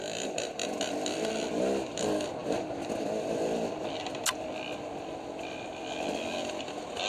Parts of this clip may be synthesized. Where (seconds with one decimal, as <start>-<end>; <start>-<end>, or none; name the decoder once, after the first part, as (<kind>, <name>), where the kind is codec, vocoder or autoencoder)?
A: none